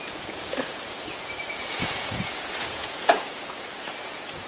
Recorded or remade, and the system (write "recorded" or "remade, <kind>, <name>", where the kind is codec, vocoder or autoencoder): remade, vocoder, Vocos